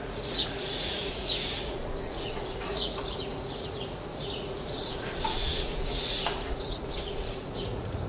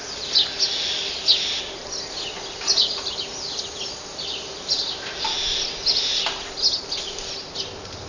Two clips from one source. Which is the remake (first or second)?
first